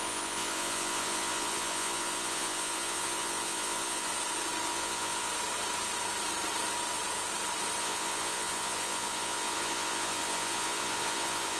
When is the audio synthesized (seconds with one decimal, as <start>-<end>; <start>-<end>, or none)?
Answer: 0.0-4.1; 4.7-5.3; 7.8-11.6